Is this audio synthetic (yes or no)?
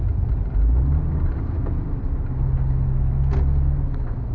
no